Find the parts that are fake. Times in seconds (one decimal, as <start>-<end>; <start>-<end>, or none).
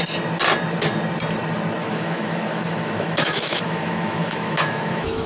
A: 1.8-5.3